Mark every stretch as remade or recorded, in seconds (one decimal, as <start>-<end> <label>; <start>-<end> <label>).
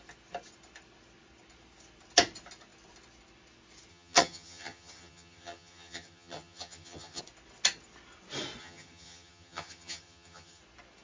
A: 0.0-3.9 recorded; 3.9-7.2 remade; 7.2-8.6 recorded; 8.6-10.6 remade; 10.6-11.0 recorded